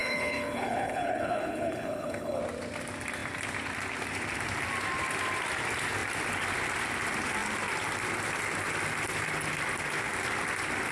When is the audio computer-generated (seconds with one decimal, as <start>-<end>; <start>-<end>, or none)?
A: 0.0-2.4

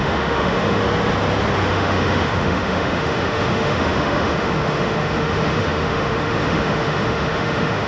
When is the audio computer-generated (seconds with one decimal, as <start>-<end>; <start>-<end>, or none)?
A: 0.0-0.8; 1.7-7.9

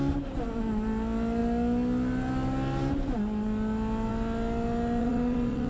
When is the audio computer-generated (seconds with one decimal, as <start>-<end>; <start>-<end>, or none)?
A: 5.0-5.7